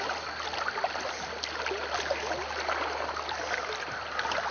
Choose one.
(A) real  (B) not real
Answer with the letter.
A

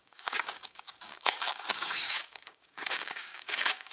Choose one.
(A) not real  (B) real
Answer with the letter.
A